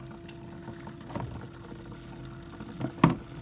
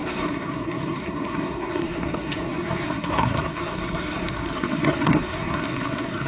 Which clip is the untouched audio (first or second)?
first